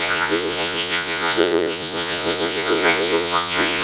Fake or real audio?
fake